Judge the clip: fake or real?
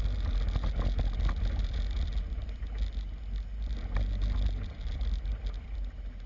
real